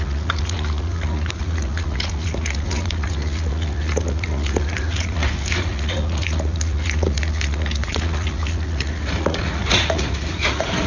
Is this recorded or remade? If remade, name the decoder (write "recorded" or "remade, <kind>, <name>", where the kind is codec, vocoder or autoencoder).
remade, vocoder, Vocos